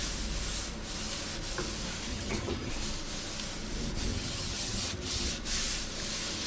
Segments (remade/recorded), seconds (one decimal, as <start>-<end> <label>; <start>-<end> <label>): 0.0-2.1 recorded; 2.1-2.7 remade; 2.7-4.1 recorded; 4.1-5.3 remade; 5.3-6.5 recorded